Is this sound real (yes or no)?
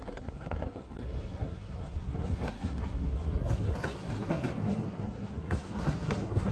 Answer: no